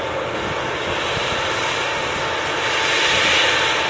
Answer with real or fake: real